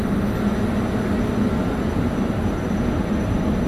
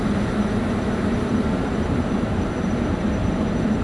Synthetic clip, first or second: second